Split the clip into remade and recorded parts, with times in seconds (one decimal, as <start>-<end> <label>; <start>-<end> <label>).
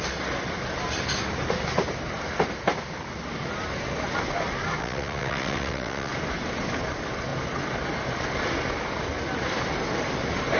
0.0-4.8 recorded; 4.8-6.1 remade; 6.1-10.6 recorded